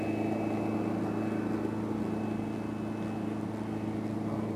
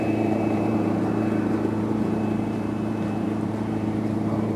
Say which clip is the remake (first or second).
second